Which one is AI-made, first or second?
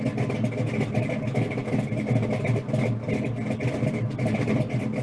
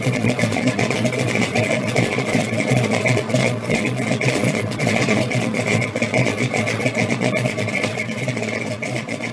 second